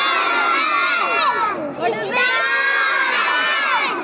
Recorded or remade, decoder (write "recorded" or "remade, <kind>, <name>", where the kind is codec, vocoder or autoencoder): recorded